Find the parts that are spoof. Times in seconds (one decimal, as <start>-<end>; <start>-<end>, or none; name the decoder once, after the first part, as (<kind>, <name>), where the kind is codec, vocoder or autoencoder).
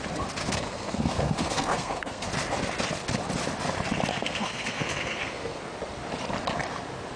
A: 0.4-2.3 (codec, SNAC); 4.1-5.6